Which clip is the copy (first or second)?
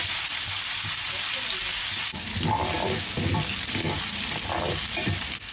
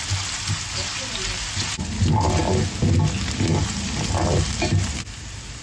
first